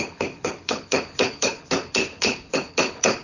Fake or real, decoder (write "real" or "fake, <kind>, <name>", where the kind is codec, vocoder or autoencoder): fake, codec, HILCodec